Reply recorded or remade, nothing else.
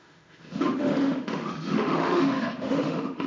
remade